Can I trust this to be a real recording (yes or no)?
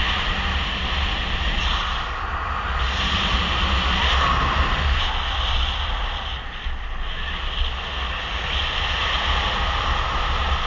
yes